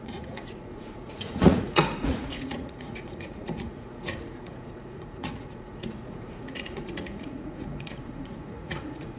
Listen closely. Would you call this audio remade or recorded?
remade